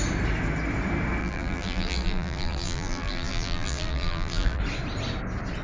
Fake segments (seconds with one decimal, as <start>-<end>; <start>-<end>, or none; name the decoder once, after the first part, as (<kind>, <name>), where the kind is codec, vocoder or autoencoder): 1.2-4.6 (vocoder, BigVGAN v2)